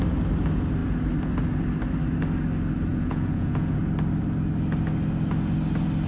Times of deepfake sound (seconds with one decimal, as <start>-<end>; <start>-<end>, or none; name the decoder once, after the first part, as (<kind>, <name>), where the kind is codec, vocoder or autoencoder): 2.9-3.8 (vocoder, Vocos)